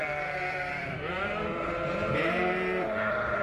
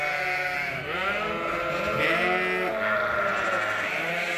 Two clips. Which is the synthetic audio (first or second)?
first